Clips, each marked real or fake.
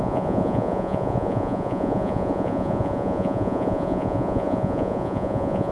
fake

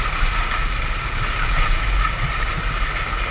real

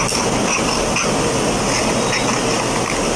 real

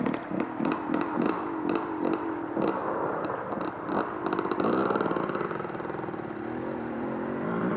fake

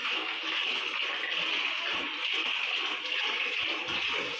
real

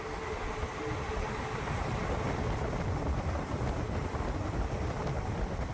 real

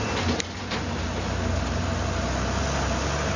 real